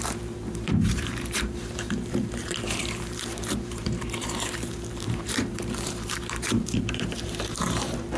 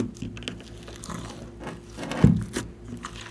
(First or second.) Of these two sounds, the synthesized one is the first